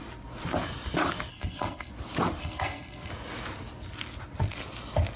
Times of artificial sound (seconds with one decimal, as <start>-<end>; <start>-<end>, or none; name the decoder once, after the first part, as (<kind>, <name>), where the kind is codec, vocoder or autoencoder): 1.3-1.9 (codec, SNAC); 2.4-3.1